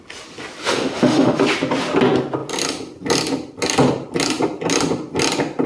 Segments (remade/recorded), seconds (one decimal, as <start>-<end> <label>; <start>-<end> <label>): 0.0-0.6 recorded; 0.6-1.4 remade; 1.4-5.7 recorded